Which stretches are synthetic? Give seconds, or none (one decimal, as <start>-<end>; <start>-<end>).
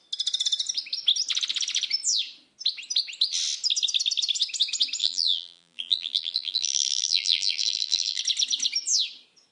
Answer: 5.0-8.2